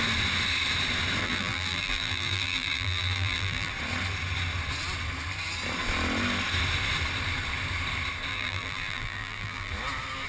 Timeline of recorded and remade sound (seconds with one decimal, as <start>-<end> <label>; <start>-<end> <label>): 0.0-1.2 recorded; 1.2-3.7 remade; 3.7-8.3 recorded; 8.3-9.7 remade; 9.7-10.3 recorded